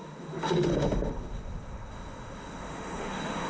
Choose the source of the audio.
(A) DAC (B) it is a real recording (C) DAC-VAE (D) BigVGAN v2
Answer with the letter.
C